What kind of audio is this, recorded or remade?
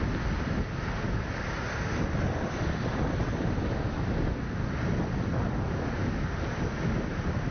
recorded